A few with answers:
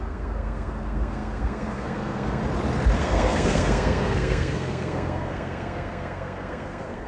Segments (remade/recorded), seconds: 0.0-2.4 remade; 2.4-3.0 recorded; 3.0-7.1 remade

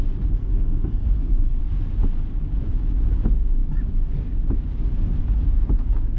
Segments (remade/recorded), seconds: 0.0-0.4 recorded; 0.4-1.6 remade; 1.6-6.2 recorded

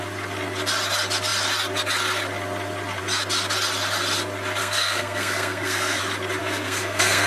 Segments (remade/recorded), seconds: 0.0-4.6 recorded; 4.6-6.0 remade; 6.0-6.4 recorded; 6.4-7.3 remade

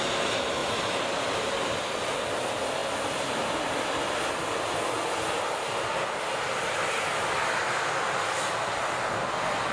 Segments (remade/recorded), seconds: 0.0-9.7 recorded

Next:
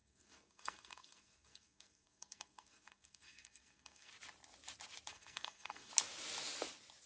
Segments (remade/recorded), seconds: 0.0-4.1 remade; 4.1-5.1 recorded; 5.1-5.9 remade; 5.9-7.1 recorded

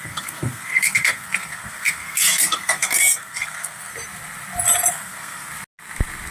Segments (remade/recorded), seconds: 0.0-3.9 remade; 3.9-4.9 recorded; 4.9-5.5 remade; 5.5-6.3 recorded

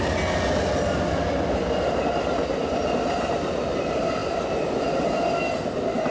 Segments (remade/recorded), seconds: 0.0-6.1 recorded

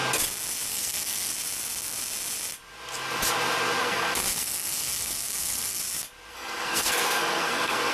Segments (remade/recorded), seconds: 0.0-0.7 recorded; 0.7-1.3 remade; 1.3-3.8 recorded; 3.8-5.8 remade; 5.8-6.3 recorded; 6.3-7.9 remade